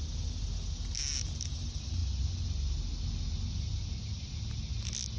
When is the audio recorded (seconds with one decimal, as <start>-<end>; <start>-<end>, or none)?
0.0-5.2